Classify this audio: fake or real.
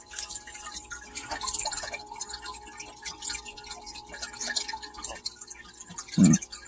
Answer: real